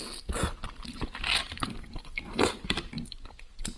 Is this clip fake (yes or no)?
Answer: no